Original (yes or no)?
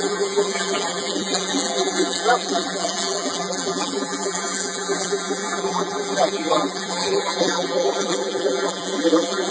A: no